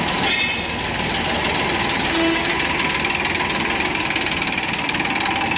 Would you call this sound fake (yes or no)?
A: no